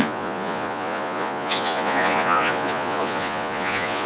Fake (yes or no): yes